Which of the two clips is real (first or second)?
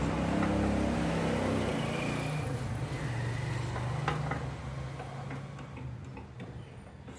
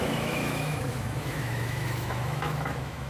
first